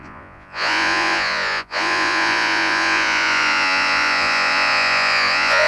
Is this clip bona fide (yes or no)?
no